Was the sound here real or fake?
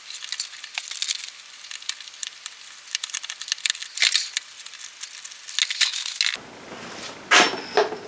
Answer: real